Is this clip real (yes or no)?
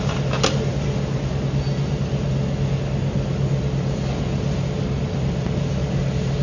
yes